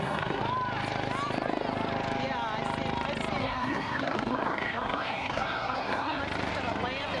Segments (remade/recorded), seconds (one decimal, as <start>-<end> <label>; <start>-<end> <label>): 0.0-0.4 remade; 0.4-3.4 recorded; 3.4-6.2 remade; 6.2-7.2 recorded